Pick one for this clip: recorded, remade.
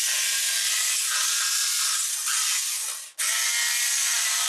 recorded